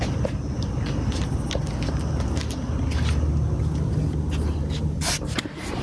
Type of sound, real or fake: real